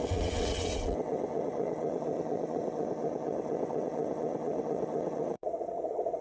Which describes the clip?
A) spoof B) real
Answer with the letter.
A